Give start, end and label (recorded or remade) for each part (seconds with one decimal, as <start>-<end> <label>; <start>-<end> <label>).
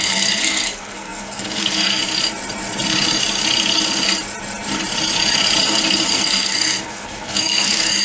0.0-2.0 remade; 2.0-6.1 recorded; 6.1-8.0 remade